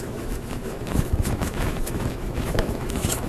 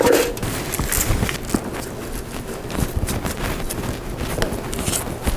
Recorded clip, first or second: second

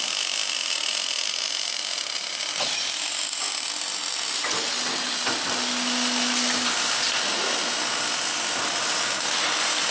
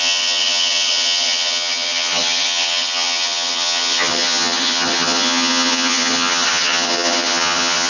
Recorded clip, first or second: first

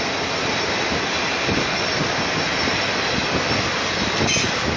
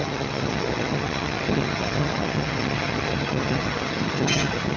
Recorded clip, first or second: first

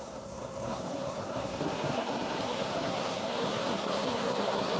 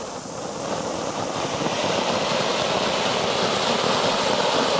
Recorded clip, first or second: second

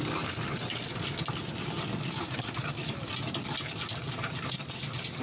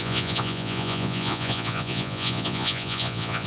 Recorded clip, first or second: first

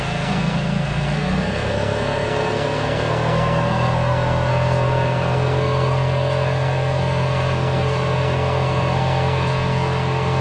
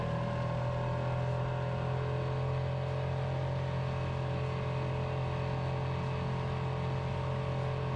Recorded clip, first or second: second